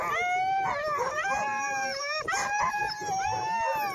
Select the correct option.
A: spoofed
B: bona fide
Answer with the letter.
B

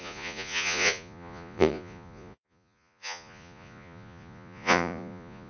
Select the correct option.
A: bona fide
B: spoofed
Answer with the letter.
B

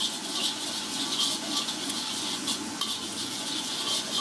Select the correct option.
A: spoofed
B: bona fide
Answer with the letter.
A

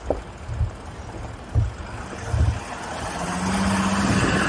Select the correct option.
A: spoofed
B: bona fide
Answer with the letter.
B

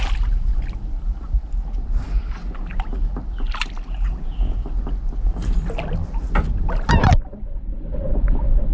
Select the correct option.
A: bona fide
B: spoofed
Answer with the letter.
A